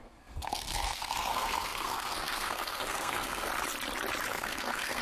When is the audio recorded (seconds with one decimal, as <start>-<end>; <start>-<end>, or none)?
3.5-4.3